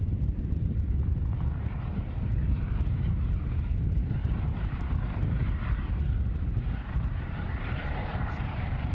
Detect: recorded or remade remade